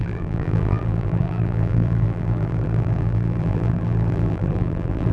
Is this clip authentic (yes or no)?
no